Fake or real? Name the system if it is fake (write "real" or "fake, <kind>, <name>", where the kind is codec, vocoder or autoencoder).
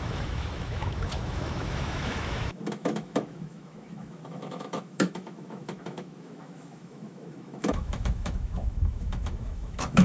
fake, autoencoder, DAC-VAE